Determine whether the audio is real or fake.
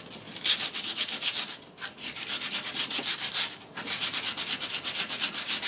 real